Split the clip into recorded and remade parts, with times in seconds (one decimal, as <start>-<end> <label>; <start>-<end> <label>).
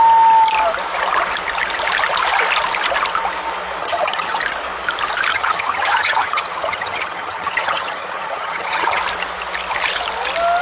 0.0-3.8 recorded; 3.8-4.4 remade; 4.4-5.3 recorded; 5.3-9.0 remade; 9.0-10.6 recorded